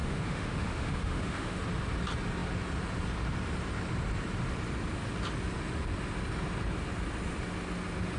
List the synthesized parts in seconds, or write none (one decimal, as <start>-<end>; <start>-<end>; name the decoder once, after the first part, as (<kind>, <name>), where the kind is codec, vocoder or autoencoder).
0.0-1.6 (autoencoder, DAC-VAE)